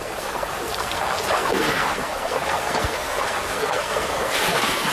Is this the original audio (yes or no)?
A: no